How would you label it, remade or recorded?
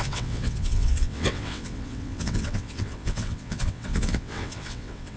remade